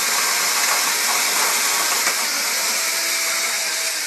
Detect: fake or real real